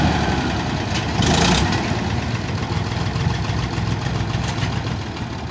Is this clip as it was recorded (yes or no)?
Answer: yes